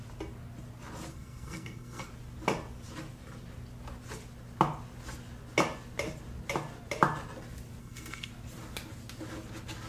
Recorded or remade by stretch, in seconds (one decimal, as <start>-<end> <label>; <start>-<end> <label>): 0.0-1.1 recorded; 1.1-2.1 remade; 2.1-7.8 recorded; 7.8-8.3 remade; 8.3-9.9 recorded